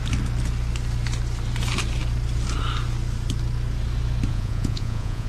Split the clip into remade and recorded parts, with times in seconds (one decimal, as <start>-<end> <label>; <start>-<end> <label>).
0.0-4.3 recorded; 4.3-5.3 remade